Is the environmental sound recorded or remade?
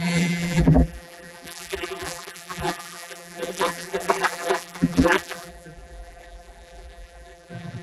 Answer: remade